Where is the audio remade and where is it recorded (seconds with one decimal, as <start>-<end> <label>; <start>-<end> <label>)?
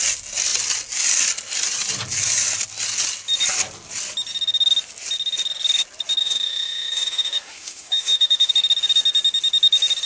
0.0-6.2 recorded; 6.2-8.5 remade; 8.5-10.1 recorded